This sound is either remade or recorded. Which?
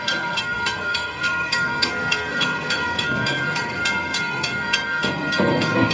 remade